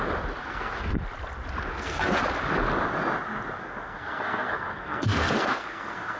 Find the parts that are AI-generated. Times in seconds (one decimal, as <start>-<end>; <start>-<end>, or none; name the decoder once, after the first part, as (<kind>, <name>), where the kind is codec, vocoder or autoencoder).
0.4-1.0 (codec, SNAC); 1.7-2.2; 3.6-6.2